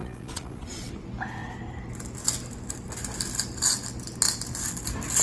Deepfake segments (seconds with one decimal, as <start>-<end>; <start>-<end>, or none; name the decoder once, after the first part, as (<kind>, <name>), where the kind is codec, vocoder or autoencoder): 0.0-0.9 (vocoder, Vocos)